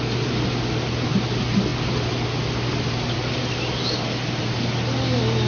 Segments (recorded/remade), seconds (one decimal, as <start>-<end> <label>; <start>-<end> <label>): 0.0-5.5 recorded